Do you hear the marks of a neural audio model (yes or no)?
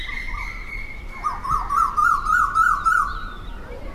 no